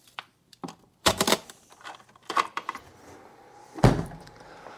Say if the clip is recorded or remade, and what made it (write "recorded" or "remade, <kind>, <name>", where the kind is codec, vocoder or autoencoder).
remade, vocoder, BigVGAN v2